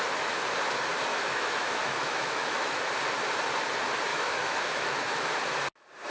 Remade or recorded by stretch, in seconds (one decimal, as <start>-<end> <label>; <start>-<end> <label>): 0.0-1.1 recorded; 1.1-2.8 remade; 2.8-4.1 recorded; 4.1-5.3 remade; 5.3-6.1 recorded